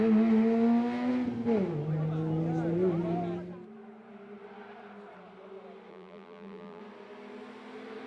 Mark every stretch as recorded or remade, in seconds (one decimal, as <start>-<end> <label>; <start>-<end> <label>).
0.0-5.9 recorded; 5.9-6.8 remade; 6.8-8.1 recorded